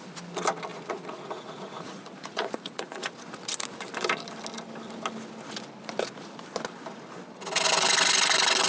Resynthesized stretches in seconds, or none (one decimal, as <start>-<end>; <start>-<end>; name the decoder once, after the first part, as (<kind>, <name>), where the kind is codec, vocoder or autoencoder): 0.7-3.1 (vocoder, Vocos)